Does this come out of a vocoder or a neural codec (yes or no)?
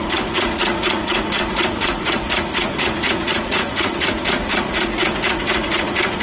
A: yes